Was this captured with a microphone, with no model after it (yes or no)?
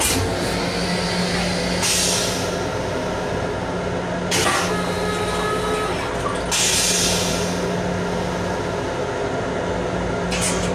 yes